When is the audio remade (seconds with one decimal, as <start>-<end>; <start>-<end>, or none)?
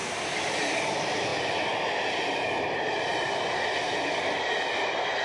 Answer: none